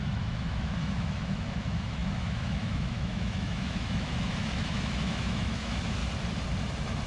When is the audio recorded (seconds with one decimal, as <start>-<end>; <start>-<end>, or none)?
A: 6.0-7.1